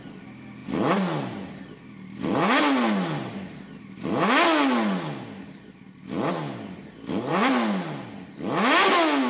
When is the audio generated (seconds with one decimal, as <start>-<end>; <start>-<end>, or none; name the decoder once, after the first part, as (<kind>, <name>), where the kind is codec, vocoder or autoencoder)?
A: none